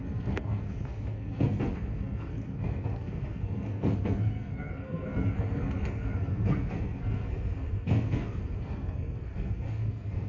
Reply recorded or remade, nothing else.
remade